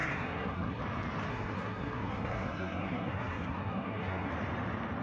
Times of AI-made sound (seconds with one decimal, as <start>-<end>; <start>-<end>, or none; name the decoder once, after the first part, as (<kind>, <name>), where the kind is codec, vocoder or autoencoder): 0.0-0.8 (codec, SNAC); 1.3-4.3